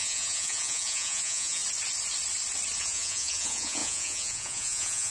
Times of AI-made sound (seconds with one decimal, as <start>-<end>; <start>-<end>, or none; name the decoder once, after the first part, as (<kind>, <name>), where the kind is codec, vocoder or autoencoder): 0.0-1.6 (vocoder, Vocos); 2.8-5.1